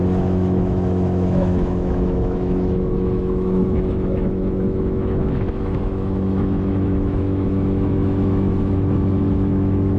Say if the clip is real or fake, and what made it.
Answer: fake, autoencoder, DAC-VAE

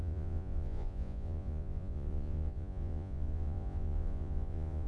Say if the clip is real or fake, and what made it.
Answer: fake, vocoder, Vocos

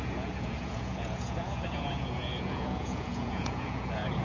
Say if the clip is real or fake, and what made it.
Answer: fake, vocoder, Vocos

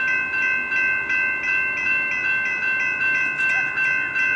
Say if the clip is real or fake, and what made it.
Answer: real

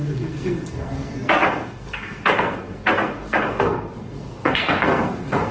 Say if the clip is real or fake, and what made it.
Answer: fake, codec, SNAC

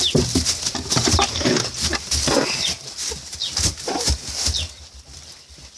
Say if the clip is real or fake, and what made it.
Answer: real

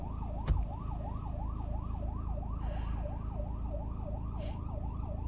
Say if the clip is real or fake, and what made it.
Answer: real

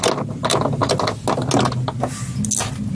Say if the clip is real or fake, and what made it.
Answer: real